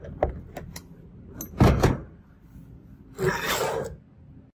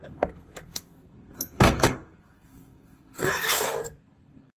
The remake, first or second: second